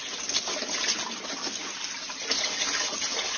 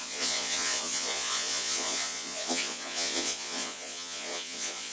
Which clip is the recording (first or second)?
first